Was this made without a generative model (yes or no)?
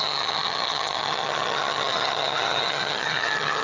no